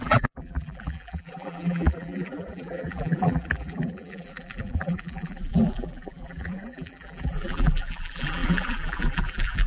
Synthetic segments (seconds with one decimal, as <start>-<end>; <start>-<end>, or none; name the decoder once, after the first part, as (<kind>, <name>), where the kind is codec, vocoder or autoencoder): 0.0-9.7 (vocoder, BigVGAN v2)